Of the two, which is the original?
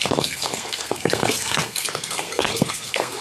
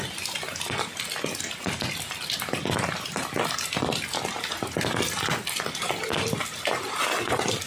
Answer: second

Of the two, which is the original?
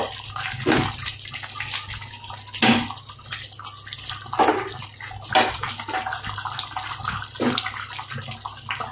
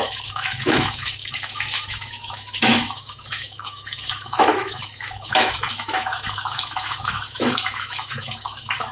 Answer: first